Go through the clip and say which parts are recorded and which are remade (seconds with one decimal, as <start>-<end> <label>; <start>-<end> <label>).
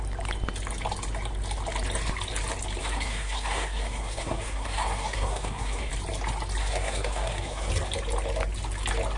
0.0-2.8 recorded; 2.8-5.9 remade; 5.9-6.6 recorded; 6.6-7.7 remade; 7.7-9.2 recorded